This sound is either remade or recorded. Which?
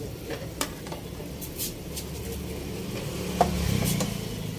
recorded